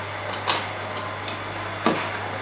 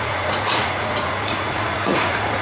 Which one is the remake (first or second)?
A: second